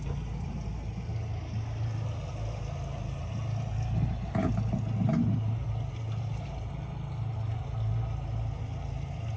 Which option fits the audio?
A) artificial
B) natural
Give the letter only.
B